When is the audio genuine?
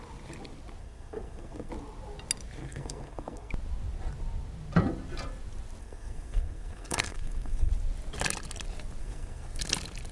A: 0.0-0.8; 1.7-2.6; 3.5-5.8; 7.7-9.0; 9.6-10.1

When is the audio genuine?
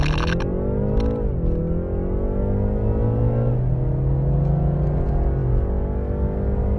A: 0.0-6.8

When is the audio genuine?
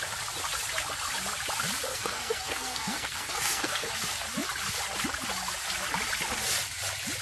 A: 0.0-1.9; 3.9-7.2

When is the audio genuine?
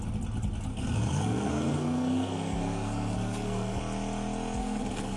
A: 0.0-0.7; 3.8-4.6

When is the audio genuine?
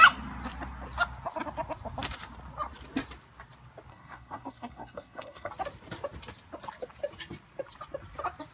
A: 0.0-3.9; 5.5-8.5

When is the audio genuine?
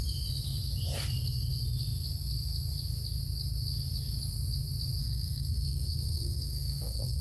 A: 0.0-5.0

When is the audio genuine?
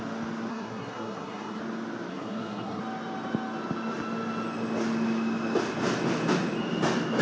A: 0.0-0.5; 1.6-2.1; 2.8-7.2